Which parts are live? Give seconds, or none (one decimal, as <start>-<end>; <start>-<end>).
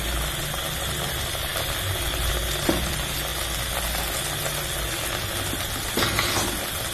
0.0-1.5; 2.9-6.9